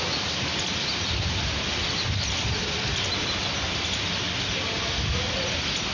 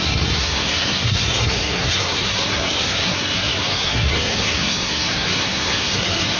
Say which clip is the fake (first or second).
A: second